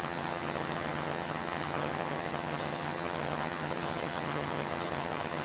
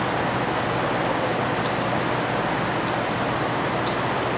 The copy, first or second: first